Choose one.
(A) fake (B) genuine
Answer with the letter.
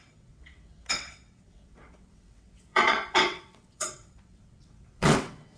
A